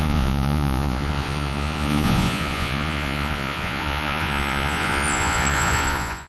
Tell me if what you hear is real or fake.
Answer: fake